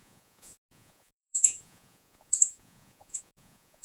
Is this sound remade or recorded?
remade